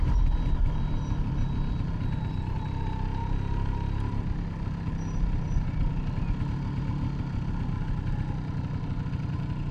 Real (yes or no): yes